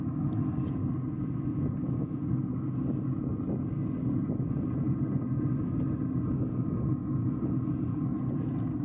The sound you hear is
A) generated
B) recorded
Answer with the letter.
B